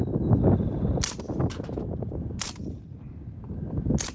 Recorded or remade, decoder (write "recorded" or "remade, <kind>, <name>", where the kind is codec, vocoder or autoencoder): recorded